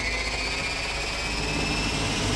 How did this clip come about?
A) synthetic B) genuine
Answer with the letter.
B